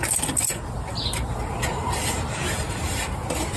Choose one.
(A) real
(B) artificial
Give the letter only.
A